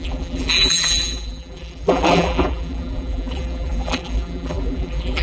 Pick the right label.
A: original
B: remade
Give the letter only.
B